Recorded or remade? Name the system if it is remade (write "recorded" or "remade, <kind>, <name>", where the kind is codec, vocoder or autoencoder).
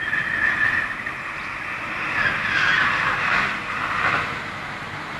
recorded